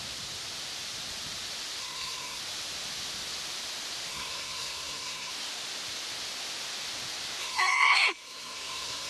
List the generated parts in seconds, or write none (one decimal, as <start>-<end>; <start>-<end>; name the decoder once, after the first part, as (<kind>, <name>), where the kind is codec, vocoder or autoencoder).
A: 1.8-2.4 (codec, SNAC); 4.1-5.3; 7.4-9.1